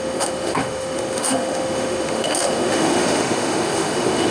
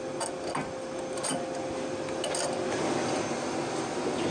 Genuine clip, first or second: second